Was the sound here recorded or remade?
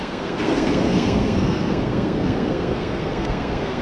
remade